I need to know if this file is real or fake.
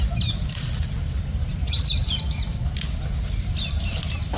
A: real